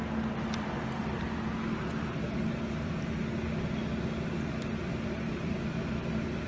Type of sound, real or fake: real